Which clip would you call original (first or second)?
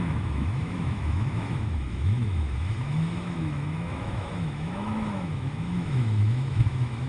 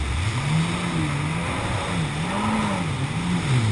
second